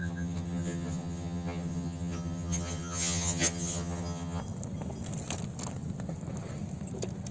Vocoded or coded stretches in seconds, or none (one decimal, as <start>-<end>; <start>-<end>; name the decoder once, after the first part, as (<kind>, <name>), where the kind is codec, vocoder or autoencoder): 0.0-4.4 (vocoder, HiFi-GAN)